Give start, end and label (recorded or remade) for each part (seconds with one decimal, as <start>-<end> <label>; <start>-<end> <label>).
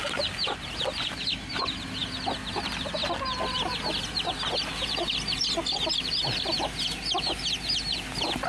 0.0-8.5 recorded